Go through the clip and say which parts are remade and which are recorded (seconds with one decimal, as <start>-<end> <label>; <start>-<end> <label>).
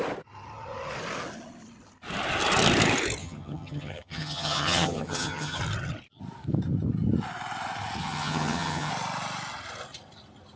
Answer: 0.0-3.2 recorded; 3.2-5.6 remade; 5.6-8.0 recorded; 8.0-8.9 remade; 8.9-10.6 recorded